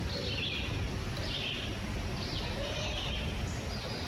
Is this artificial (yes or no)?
no